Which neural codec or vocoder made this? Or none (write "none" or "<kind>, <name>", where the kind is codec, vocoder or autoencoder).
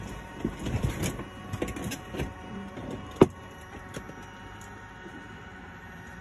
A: none